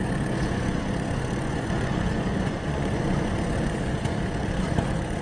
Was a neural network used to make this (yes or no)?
yes